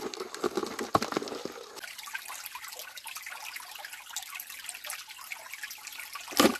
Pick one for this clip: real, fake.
real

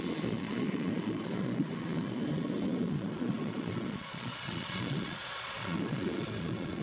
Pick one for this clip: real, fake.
fake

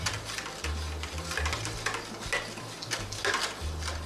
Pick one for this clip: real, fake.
real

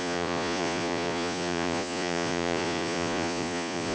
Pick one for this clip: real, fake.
fake